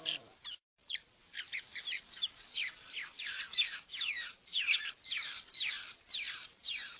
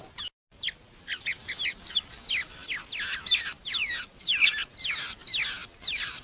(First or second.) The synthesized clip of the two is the first